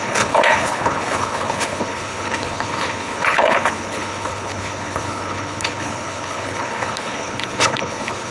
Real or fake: fake